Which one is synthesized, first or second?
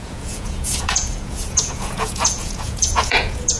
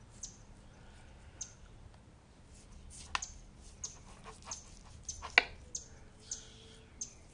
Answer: first